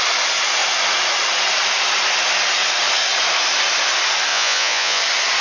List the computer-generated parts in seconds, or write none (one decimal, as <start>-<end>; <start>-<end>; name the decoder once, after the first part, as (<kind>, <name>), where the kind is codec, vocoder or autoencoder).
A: 4.3-5.0 (vocoder, Vocos)